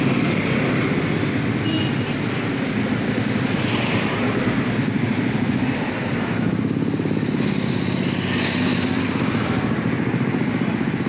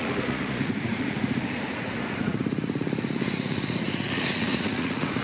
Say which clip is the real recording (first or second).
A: first